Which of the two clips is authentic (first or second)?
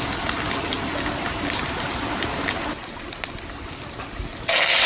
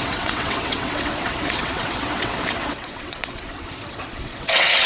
first